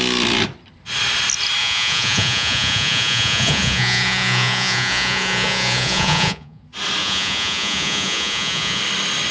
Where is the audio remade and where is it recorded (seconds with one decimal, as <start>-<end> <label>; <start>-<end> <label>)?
0.0-1.6 recorded; 1.6-6.6 remade; 6.6-7.0 recorded; 7.0-8.8 remade; 8.8-9.3 recorded